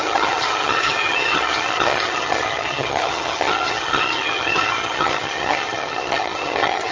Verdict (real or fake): fake